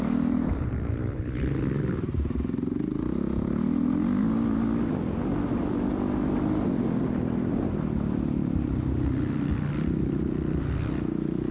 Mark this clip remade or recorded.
recorded